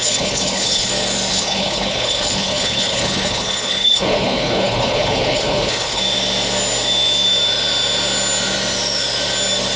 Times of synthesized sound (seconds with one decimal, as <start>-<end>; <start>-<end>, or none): 0.0-0.9; 1.3-6.0